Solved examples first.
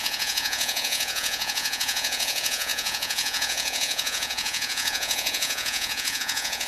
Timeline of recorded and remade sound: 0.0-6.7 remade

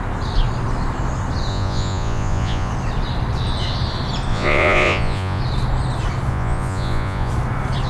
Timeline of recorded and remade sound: 0.0-1.5 recorded; 1.5-2.7 remade; 2.7-4.3 recorded; 4.3-5.4 remade; 5.4-6.3 recorded; 6.3-7.3 remade; 7.3-7.9 recorded

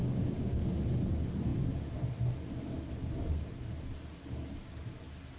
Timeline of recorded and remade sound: 0.0-0.6 remade; 0.6-5.4 recorded

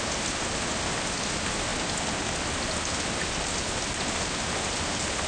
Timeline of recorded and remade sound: 0.0-5.3 recorded